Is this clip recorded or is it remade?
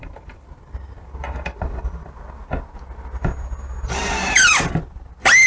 recorded